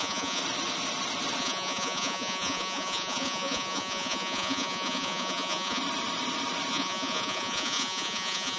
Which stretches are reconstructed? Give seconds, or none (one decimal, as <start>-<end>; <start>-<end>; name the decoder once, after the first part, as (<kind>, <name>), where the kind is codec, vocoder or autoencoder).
0.0-0.4 (vocoder, Vocos); 1.4-5.8; 6.7-8.6